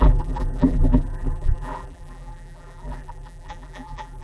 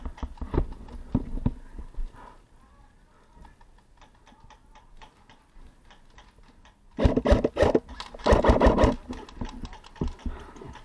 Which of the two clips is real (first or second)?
second